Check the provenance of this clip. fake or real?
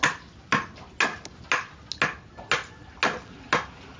real